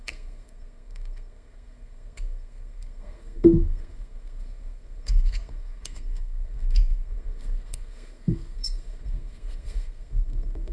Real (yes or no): no